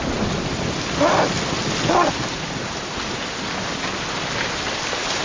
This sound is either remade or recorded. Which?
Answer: recorded